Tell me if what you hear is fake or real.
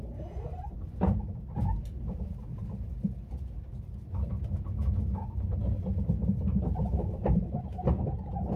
real